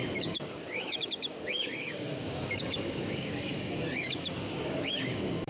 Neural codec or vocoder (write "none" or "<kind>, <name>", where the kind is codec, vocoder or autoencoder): codec, DAC